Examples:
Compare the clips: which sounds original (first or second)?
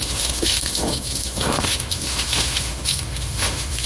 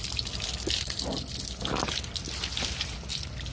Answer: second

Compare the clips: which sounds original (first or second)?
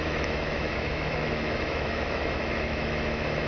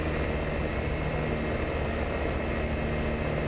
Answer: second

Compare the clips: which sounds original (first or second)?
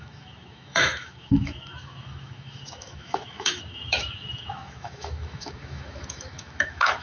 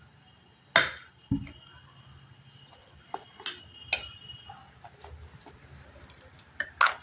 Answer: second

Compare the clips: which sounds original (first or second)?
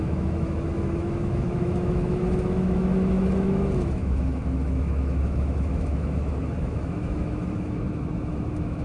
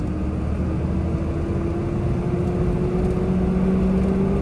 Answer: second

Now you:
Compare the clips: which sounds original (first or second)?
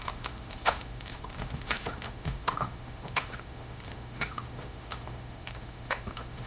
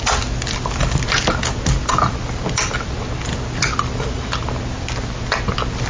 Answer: second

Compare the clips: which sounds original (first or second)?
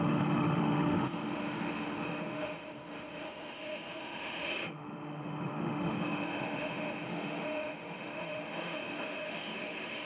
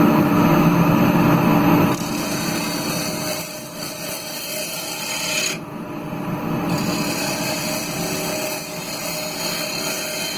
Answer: second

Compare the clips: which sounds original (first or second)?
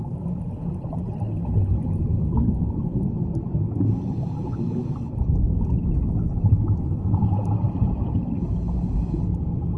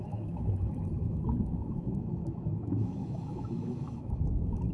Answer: first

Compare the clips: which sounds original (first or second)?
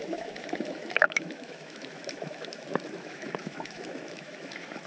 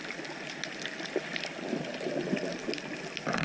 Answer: second